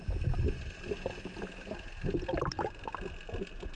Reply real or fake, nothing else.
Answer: real